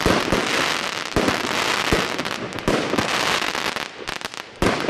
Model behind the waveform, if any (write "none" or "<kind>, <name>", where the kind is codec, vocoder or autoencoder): none